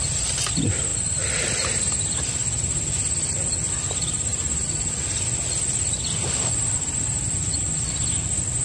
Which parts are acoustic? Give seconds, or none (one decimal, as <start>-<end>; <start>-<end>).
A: 0.0-8.6